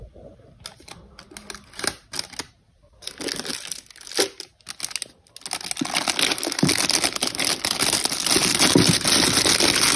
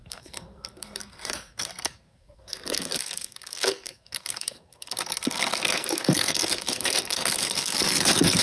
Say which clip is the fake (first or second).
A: second